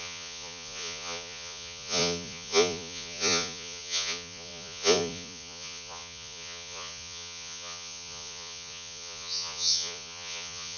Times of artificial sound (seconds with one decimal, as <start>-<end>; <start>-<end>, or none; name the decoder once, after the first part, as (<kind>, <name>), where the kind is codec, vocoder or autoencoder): 0.0-10.8 (vocoder, Vocos)